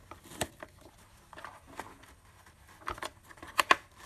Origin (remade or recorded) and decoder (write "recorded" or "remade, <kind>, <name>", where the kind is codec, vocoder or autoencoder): recorded